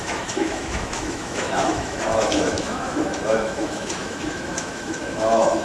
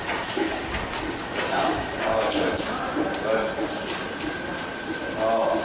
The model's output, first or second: first